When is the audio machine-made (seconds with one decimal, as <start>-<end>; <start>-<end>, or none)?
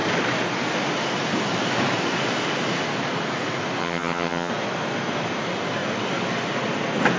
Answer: 3.8-4.5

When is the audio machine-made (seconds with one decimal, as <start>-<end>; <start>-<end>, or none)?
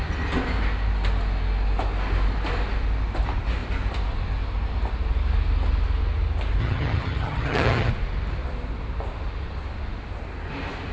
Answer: 6.6-7.9